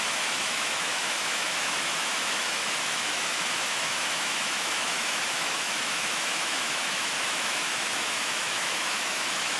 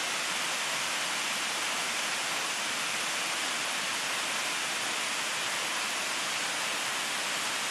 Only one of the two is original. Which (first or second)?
second